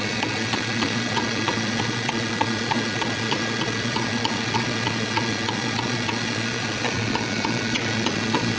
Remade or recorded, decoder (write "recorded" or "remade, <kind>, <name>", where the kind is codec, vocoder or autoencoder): remade, vocoder, Vocos